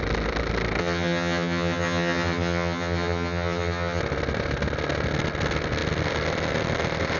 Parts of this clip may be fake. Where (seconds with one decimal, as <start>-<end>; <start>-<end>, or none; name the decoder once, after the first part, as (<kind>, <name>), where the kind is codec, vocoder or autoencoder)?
0.8-4.0 (vocoder, HiFi-GAN)